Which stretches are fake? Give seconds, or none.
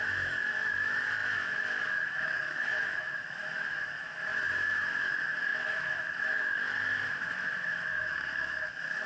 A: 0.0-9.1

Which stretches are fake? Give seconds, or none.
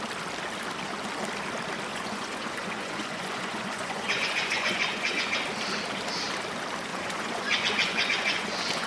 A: 1.9-5.3; 6.9-8.9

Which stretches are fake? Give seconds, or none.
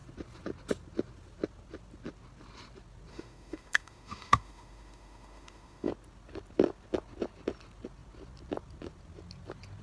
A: 3.1-5.9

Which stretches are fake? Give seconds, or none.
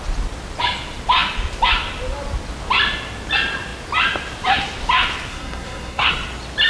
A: 5.3-6.1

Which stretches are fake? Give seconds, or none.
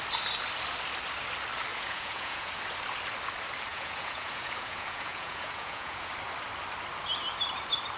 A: 1.7-2.6; 3.7-6.1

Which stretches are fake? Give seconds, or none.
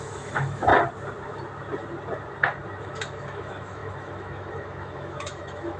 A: 0.0-0.7; 2.8-5.8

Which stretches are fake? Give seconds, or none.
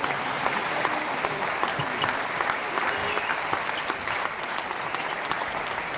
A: 0.0-1.7; 2.6-3.0; 4.4-6.0